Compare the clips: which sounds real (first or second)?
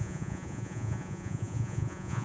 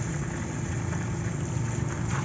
second